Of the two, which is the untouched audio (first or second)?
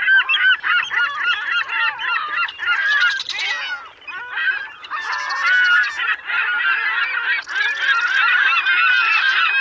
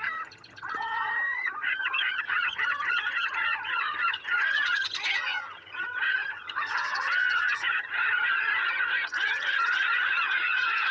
first